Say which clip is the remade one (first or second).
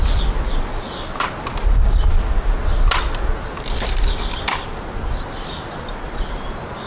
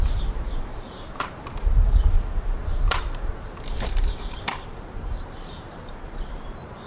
second